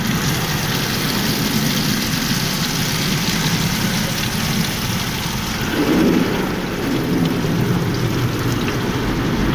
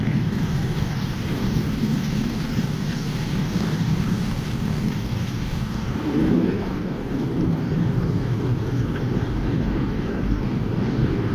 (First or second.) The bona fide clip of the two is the first